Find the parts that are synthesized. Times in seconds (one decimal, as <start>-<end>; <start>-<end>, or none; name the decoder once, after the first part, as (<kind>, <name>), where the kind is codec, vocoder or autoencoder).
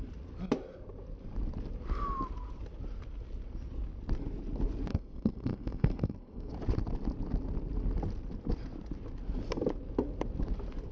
4.9-6.5 (codec, SNAC)